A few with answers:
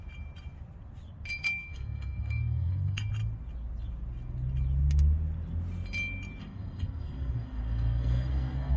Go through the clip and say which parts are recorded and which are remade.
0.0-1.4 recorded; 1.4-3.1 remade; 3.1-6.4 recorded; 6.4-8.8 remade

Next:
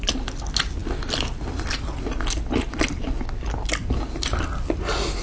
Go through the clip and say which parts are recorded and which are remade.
0.0-5.2 recorded

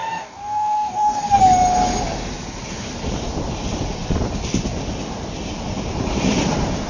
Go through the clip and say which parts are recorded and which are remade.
0.0-1.4 remade; 1.4-6.9 recorded

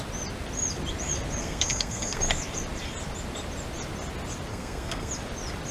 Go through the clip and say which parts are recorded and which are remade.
0.0-1.4 recorded; 1.4-2.2 remade; 2.2-4.5 recorded; 4.5-5.1 remade; 5.1-5.7 recorded

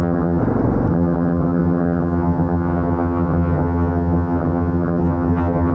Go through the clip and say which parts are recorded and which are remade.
0.0-0.4 remade; 0.4-0.9 recorded; 0.9-5.7 remade

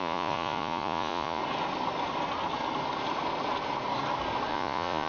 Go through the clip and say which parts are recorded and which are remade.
0.0-1.4 remade; 1.4-4.5 recorded; 4.5-5.1 remade

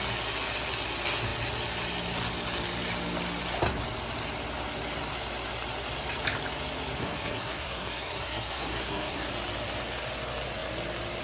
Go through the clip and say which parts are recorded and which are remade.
0.0-7.0 recorded; 7.0-9.3 remade; 9.3-11.2 recorded